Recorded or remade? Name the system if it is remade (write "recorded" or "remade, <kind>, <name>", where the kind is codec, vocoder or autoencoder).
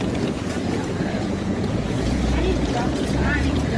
remade, vocoder, Vocos